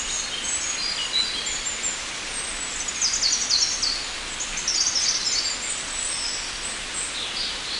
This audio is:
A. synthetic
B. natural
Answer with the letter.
B